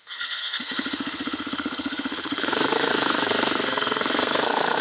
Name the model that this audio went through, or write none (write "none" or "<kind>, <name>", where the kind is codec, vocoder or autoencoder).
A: codec, SNAC